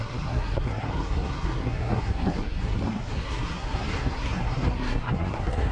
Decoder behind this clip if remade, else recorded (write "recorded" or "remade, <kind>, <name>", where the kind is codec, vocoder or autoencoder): remade, codec, SNAC